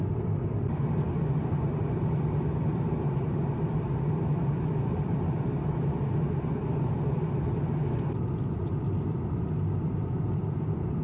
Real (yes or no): no